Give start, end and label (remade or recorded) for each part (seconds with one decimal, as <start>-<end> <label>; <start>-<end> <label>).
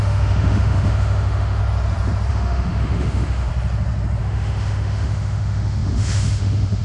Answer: 0.0-1.6 remade; 1.6-2.3 recorded; 2.3-3.5 remade; 3.5-4.2 recorded; 4.2-6.8 remade